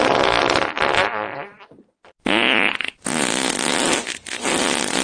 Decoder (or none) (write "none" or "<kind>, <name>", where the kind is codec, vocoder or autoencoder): none